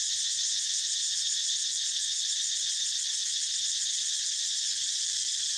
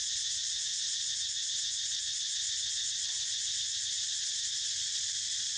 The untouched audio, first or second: first